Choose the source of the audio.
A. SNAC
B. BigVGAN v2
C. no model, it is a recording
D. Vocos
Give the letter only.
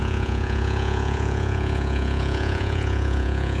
D